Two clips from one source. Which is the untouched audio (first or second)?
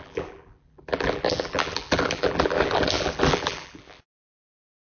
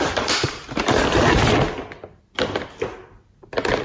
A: second